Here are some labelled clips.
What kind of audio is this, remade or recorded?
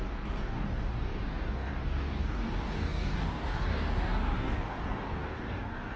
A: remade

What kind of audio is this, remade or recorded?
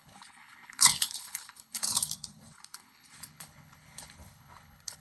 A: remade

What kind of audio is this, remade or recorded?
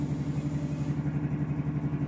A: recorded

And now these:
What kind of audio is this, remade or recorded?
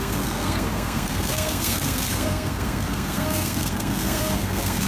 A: remade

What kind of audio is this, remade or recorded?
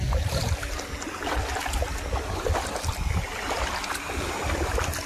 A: recorded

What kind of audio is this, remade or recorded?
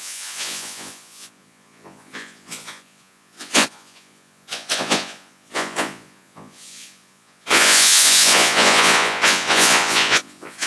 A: remade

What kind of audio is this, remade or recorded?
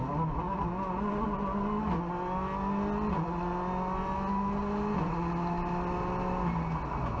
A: recorded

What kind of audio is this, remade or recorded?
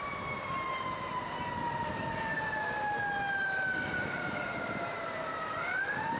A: recorded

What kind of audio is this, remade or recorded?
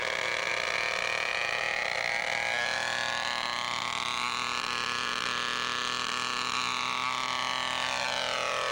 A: recorded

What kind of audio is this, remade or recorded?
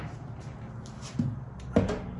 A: recorded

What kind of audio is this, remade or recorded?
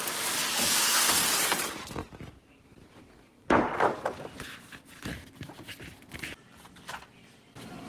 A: recorded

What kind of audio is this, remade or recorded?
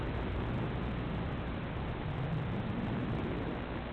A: recorded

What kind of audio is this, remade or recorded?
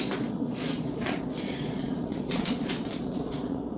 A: remade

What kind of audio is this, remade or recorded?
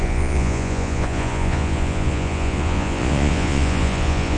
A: remade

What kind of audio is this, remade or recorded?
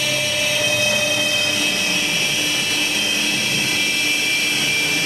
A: recorded